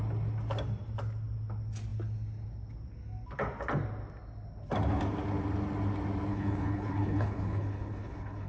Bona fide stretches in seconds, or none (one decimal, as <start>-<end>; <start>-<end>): 0.0-6.3

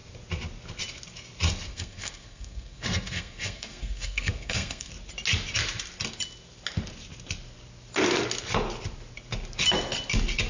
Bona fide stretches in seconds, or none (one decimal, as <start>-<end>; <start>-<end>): 0.0-1.7; 4.9-10.5

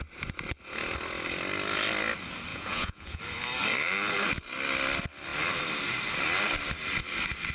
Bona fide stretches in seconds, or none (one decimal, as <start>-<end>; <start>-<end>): 0.0-2.5; 3.2-7.5

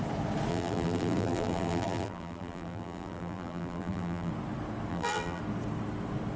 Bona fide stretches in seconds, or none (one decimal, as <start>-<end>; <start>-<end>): 0.0-0.5; 4.3-4.9; 5.4-6.4

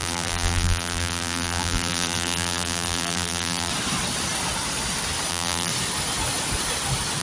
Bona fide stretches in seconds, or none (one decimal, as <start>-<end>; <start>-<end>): 3.7-5.3; 5.7-7.2

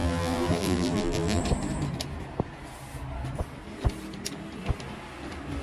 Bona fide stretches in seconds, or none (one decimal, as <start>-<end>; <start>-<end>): 1.4-5.6

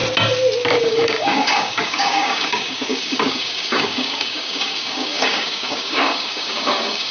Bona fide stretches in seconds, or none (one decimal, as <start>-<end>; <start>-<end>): 0.0-0.8